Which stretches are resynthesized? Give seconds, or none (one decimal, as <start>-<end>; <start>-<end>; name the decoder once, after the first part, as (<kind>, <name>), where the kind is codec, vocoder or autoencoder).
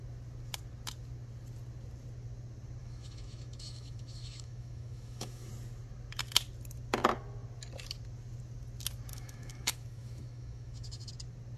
2.8-5.5 (autoencoder, DAC-VAE); 9.1-11.1